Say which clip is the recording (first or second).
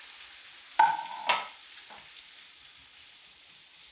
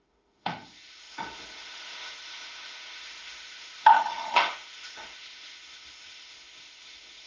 first